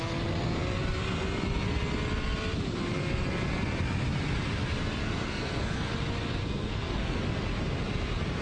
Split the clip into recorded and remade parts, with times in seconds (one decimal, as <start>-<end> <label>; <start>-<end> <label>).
0.0-5.0 recorded; 5.0-5.9 remade; 5.9-6.4 recorded; 6.4-7.2 remade; 7.2-8.4 recorded